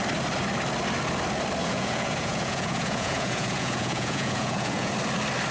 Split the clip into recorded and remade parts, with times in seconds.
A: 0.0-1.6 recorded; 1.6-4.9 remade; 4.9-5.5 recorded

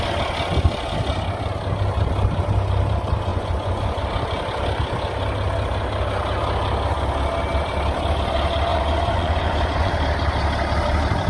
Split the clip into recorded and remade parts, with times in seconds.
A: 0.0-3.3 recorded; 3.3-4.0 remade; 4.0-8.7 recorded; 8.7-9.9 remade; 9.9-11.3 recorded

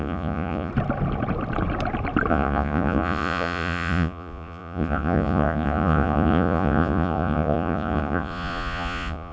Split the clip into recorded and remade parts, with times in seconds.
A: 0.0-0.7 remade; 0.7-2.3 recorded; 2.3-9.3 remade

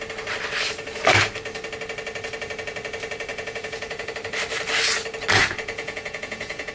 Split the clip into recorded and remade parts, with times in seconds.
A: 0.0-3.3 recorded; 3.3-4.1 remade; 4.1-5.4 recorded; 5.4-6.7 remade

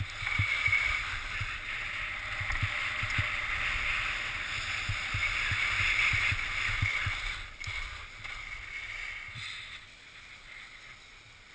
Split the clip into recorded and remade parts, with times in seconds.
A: 0.0-11.5 recorded

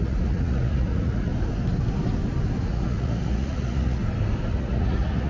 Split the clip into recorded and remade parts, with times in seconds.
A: 0.0-1.3 remade; 1.3-2.6 recorded; 2.6-4.0 remade; 4.0-4.5 recorded; 4.5-5.3 remade